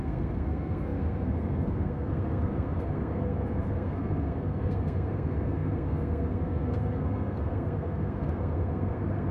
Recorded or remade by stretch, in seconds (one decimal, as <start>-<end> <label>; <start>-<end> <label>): 0.0-9.3 remade

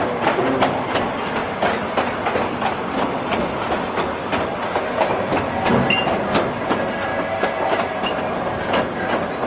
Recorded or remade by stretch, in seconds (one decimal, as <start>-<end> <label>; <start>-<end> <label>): 0.0-1.4 recorded; 1.4-3.6 remade; 3.6-7.1 recorded; 7.1-8.0 remade; 8.0-9.5 recorded

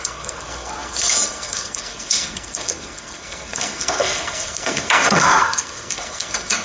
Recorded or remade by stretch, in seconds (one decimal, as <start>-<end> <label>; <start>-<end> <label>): 0.0-6.6 remade

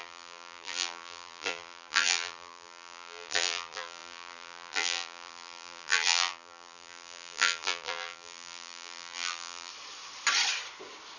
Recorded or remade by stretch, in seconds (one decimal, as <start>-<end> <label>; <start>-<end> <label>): 0.0-9.7 remade; 9.7-11.2 recorded

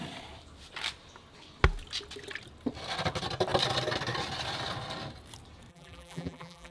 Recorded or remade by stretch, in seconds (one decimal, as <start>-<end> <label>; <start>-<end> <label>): 0.0-5.7 recorded; 5.7-6.7 remade

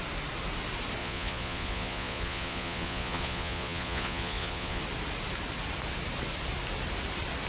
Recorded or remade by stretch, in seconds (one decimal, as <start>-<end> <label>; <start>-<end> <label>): 0.0-1.0 recorded; 1.0-4.8 remade; 4.8-7.5 recorded

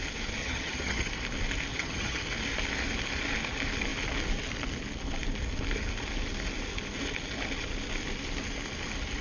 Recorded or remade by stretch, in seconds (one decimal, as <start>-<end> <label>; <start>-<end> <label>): 0.0-0.4 recorded; 0.4-1.1 remade; 1.1-1.7 recorded; 1.7-2.2 remade; 2.2-9.2 recorded

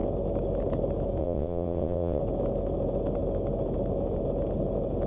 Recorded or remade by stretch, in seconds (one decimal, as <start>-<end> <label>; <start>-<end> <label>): 0.0-1.2 recorded; 1.2-2.2 remade; 2.2-5.1 recorded